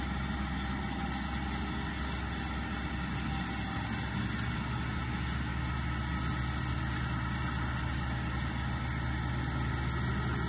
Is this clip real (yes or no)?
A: yes